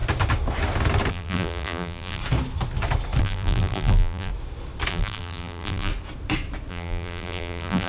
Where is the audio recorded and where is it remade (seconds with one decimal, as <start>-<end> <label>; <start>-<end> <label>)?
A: 0.0-1.1 recorded; 1.1-2.2 remade; 2.2-3.2 recorded; 3.2-4.3 remade; 4.3-4.9 recorded; 4.9-5.9 remade; 5.9-6.7 recorded; 6.7-7.9 remade